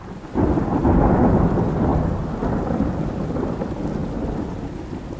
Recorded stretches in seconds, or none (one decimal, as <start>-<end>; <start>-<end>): 0.0-5.2